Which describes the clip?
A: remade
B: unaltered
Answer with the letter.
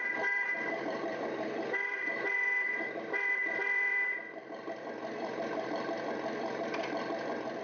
A